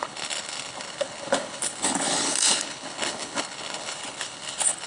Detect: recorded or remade remade